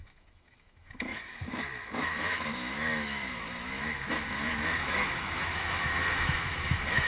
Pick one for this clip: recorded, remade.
remade